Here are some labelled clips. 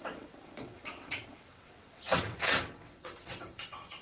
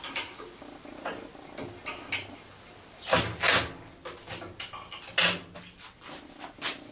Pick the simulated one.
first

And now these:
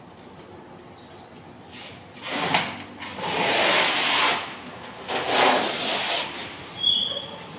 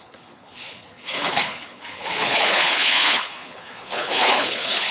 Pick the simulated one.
second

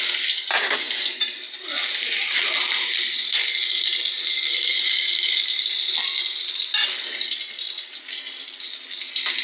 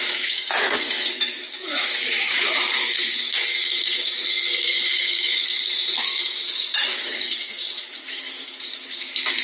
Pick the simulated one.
second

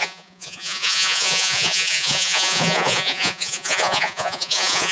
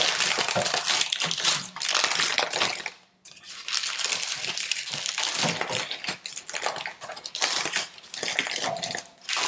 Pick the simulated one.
first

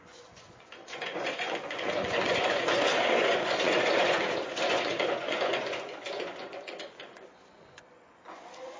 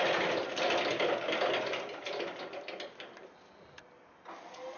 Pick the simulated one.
first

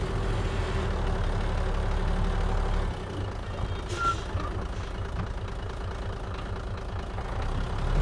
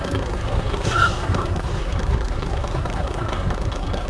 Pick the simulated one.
second